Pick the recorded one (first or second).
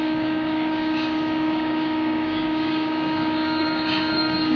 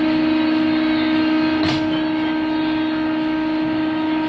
second